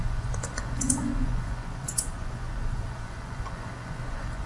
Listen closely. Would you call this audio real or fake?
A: fake